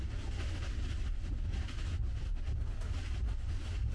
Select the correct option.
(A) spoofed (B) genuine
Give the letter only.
B